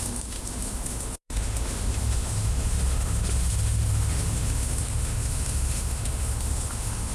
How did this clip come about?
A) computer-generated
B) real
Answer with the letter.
A